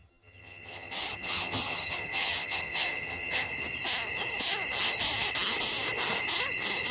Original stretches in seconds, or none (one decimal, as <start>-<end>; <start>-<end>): 3.5-6.9